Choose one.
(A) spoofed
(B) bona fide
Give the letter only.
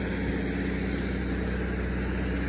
B